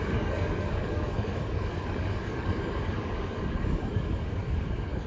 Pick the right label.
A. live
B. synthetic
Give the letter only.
B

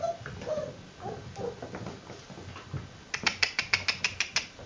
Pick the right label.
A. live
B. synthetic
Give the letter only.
A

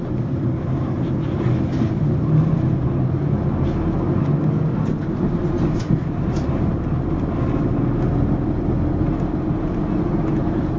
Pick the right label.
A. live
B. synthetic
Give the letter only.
A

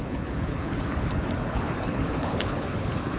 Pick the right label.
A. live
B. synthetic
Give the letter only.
B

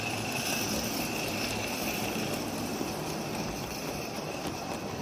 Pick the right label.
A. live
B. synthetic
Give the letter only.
B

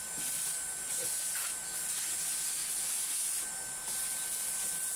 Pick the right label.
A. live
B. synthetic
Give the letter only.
A